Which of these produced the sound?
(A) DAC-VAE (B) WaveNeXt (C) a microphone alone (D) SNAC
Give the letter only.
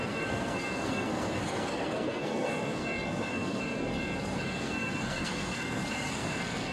D